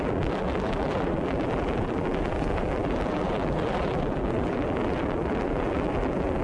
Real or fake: fake